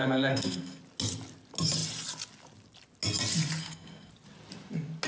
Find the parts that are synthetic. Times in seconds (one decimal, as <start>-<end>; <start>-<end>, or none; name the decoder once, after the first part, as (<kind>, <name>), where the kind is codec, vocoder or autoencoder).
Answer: 0.0-0.8 (codec, SNAC); 3.6-4.1